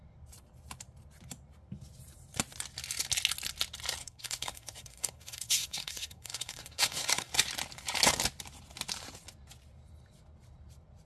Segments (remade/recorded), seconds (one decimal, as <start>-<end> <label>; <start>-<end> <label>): 0.0-4.0 recorded; 4.0-7.3 remade; 7.3-11.1 recorded